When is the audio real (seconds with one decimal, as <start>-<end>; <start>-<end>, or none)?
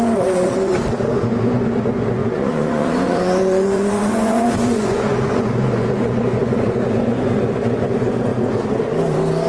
0.7-1.2; 8.3-9.5